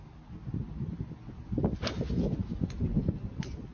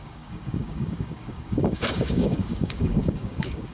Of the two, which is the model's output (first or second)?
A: second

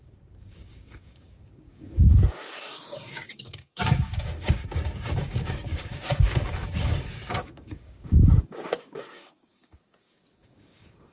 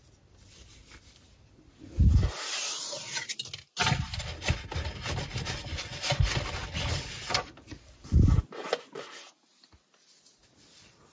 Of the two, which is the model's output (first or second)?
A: first